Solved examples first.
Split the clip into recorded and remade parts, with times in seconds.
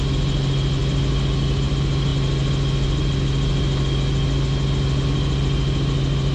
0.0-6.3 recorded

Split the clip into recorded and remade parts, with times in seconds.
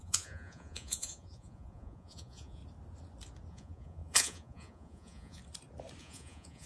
0.0-2.6 remade; 2.6-3.5 recorded; 3.5-5.4 remade; 5.4-6.0 recorded; 6.0-6.7 remade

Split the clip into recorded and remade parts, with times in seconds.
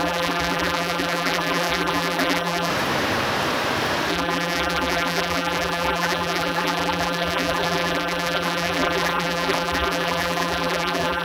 0.0-2.7 remade; 2.7-4.1 recorded; 4.1-11.2 remade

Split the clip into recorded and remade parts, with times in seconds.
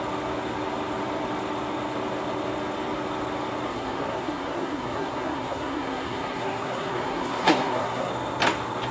0.0-3.7 recorded; 3.7-8.1 remade; 8.1-8.9 recorded